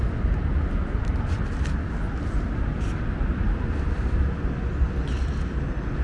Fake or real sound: real